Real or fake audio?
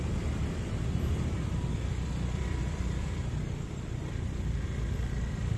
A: fake